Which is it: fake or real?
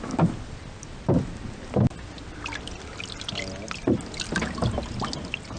real